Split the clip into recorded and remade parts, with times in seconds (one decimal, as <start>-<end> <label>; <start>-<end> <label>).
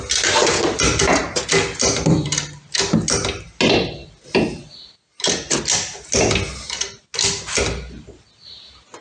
0.0-9.0 recorded